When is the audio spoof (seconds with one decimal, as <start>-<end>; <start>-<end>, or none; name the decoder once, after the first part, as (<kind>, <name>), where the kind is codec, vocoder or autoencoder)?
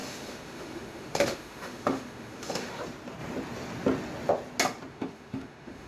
0.0-2.8 (autoencoder, DAC-VAE); 4.9-5.9